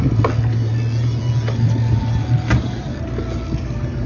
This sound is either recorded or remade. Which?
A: recorded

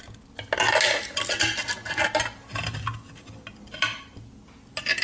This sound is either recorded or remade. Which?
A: recorded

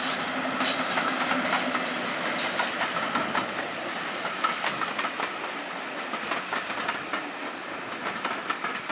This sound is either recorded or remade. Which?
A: recorded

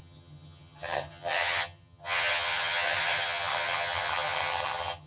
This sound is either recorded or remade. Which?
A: remade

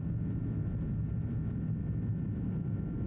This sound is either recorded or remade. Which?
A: recorded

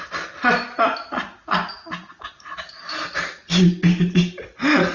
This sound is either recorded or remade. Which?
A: recorded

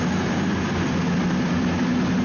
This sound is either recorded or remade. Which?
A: recorded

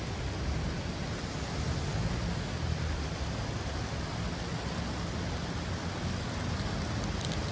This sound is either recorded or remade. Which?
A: recorded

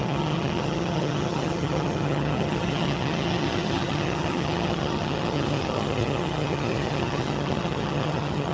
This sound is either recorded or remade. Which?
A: remade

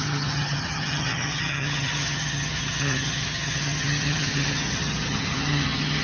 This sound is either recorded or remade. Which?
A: remade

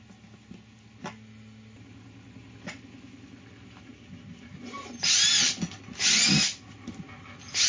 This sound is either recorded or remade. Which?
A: recorded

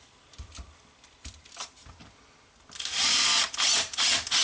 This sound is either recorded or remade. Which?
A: recorded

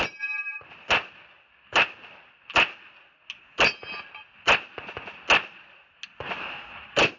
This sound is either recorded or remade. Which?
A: recorded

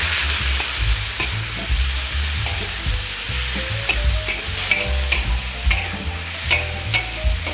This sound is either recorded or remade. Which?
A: recorded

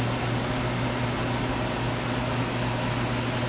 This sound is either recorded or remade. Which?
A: recorded